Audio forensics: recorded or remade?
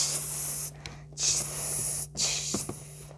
recorded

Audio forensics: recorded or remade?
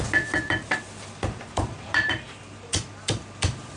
remade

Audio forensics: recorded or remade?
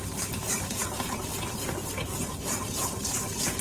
remade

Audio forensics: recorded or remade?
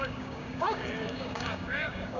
remade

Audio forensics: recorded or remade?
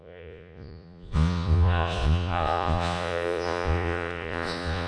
remade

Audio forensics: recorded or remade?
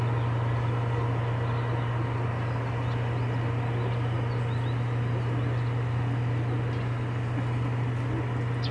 recorded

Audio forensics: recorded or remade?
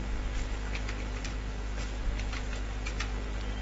recorded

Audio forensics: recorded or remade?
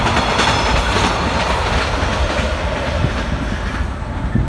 recorded